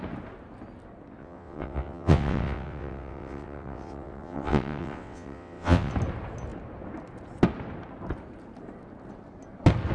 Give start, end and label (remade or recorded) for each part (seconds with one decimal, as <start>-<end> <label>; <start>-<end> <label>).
0.0-1.2 recorded; 1.2-5.9 remade; 5.9-9.9 recorded